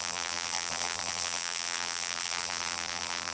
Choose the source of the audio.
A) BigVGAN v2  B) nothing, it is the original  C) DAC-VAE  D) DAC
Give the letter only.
A